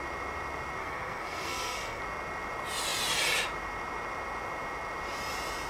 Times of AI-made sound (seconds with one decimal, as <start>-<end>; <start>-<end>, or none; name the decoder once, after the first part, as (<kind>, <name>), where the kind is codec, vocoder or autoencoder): 0.8-2.0 (codec, SNAC)